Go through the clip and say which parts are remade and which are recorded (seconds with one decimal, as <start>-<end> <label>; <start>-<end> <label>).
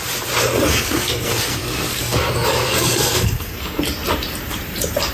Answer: 0.0-0.7 recorded; 0.7-3.8 remade; 3.8-5.1 recorded